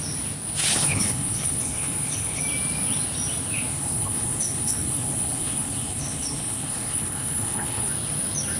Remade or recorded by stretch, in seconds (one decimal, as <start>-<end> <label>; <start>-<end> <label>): 0.0-0.6 recorded; 0.6-2.4 remade; 2.4-3.7 recorded; 3.7-7.9 remade; 7.9-8.6 recorded